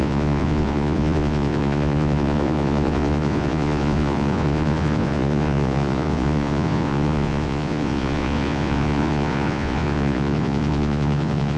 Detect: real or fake fake